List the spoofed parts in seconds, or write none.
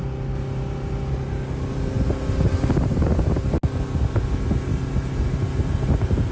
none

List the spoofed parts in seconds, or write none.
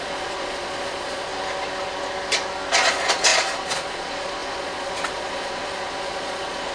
0.0-1.3 (vocoder, Vocos); 2.9-6.7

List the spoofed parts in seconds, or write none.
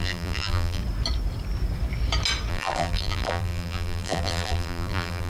0.0-0.8 (vocoder, BigVGAN v2); 2.5-5.3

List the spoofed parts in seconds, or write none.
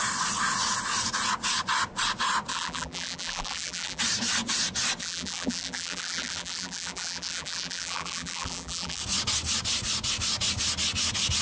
2.5-4.0 (vocoder, BigVGAN v2); 5.0-9.0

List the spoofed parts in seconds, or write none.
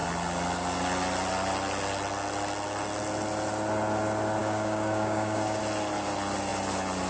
4.4-5.6 (codec, DAC)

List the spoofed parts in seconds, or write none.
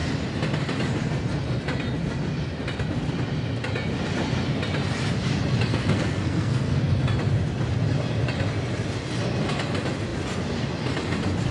5.7-6.8 (codec, SNAC)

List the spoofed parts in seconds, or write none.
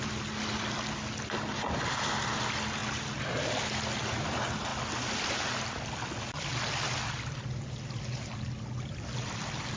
none